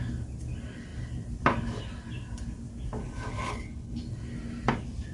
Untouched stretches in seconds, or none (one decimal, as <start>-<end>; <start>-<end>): 0.0-3.0; 4.0-5.1

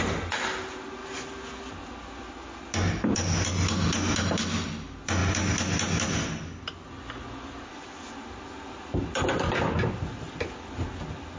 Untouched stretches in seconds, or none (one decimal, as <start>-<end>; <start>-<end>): 0.0-11.4

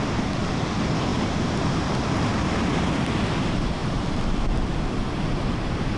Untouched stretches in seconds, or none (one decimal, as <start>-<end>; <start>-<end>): 0.0-3.8; 4.8-6.0

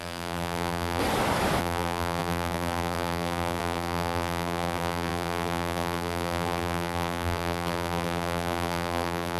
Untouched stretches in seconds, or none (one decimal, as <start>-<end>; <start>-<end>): 1.0-1.6